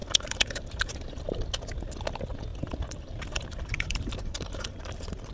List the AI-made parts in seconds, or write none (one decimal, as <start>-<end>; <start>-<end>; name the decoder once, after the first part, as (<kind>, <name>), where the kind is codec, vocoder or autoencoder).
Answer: 0.0-1.2 (vocoder, BigVGAN v2); 2.5-5.3